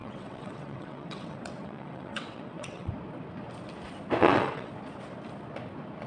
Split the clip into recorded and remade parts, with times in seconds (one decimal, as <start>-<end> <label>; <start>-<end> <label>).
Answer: 0.0-2.9 remade; 2.9-4.2 recorded; 4.2-4.7 remade; 4.7-6.1 recorded